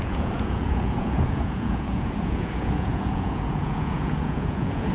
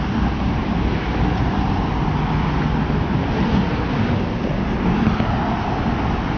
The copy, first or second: first